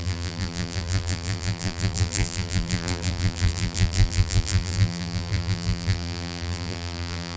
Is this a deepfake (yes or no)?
yes